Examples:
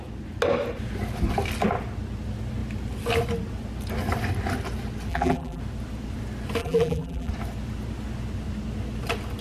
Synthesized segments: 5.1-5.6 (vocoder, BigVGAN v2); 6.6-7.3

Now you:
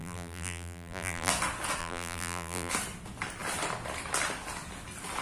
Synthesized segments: 0.0-1.3 (vocoder, BigVGAN v2); 1.8-2.7

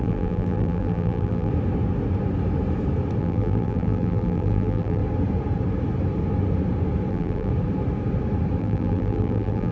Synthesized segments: 0.0-1.5 (vocoder, BigVGAN v2); 3.2-5.0; 7.1-7.5; 8.6-9.7